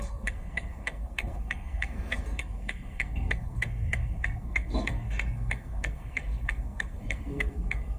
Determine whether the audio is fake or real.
fake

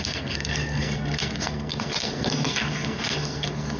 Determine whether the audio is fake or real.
fake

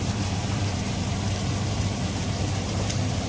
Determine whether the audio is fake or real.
fake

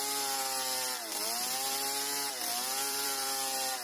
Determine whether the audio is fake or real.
fake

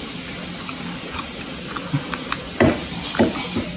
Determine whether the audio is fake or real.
real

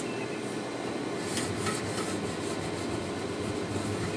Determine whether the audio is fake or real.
real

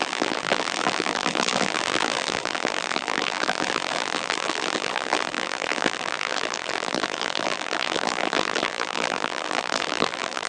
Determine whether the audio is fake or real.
fake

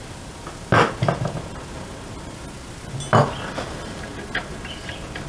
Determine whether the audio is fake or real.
real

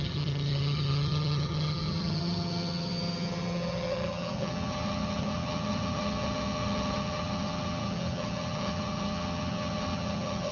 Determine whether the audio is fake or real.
fake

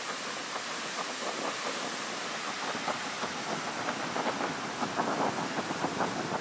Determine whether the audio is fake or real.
real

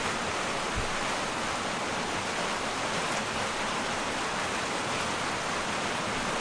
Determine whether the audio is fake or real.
real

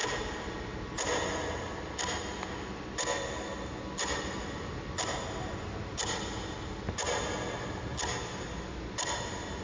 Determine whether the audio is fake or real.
real